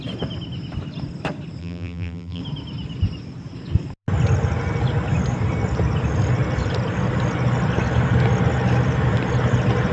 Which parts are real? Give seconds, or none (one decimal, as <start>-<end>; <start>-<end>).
0.0-1.6; 2.4-9.9